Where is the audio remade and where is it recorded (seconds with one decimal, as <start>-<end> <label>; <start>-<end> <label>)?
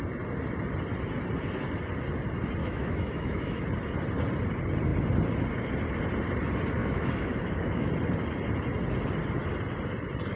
0.0-2.6 recorded; 2.6-3.6 remade; 3.6-6.8 recorded; 6.8-7.9 remade; 7.9-10.4 recorded